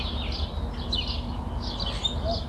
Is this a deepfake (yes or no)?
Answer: no